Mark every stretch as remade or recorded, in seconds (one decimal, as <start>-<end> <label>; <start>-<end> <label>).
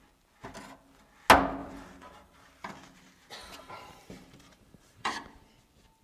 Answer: 0.0-1.6 recorded; 1.6-2.7 remade; 2.7-3.4 recorded; 3.4-5.5 remade; 5.5-6.0 recorded